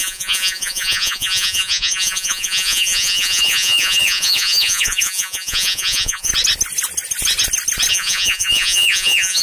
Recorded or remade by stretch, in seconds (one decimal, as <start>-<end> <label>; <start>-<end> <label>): 0.0-6.3 remade; 6.3-7.9 recorded; 7.9-9.4 remade